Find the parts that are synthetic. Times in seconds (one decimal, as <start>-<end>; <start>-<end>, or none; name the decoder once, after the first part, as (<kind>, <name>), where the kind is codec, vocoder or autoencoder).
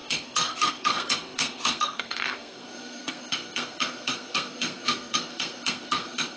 0.0-6.4 (codec, SNAC)